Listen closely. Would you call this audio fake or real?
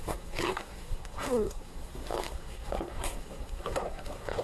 fake